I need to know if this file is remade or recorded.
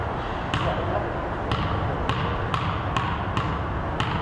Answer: recorded